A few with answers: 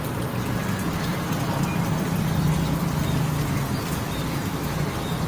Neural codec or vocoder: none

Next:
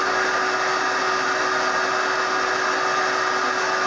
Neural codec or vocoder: none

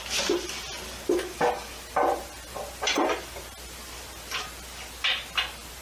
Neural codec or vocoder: none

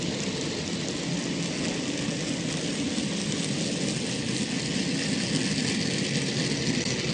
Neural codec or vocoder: none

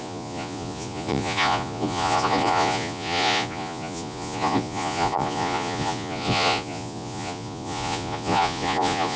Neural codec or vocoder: vocoder, Vocos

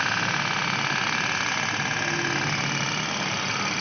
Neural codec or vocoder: none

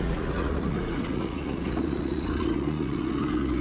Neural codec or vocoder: vocoder, Vocos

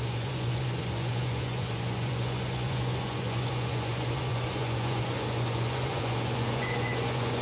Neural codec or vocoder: vocoder, Vocos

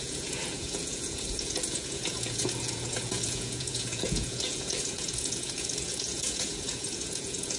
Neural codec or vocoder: vocoder, Vocos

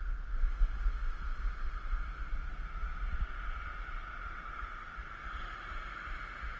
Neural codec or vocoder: none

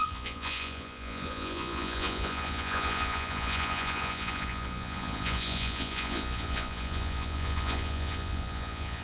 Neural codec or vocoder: vocoder, Vocos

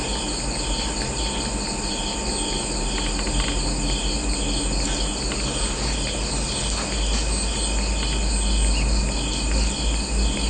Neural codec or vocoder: none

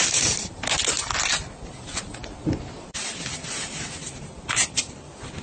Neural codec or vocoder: none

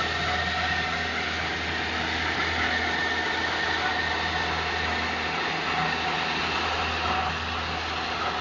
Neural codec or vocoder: none